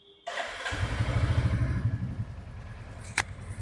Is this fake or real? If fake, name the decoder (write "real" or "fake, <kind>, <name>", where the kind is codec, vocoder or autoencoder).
real